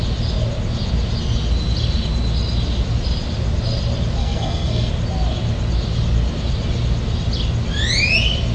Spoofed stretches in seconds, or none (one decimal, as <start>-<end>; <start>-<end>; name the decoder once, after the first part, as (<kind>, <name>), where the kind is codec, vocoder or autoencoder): 4.2-4.9 (codec, SNAC)